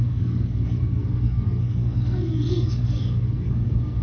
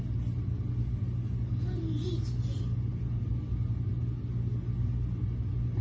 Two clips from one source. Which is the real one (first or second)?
second